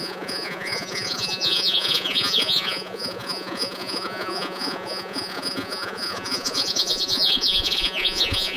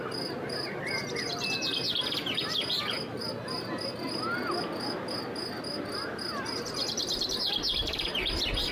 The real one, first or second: second